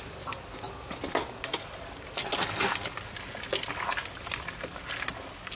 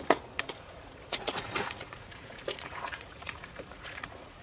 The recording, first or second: first